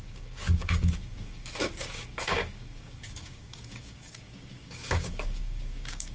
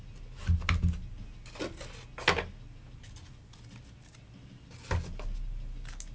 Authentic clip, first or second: second